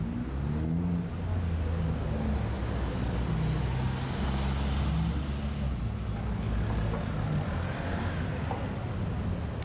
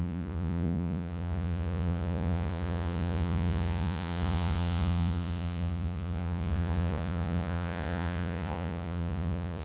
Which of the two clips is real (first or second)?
first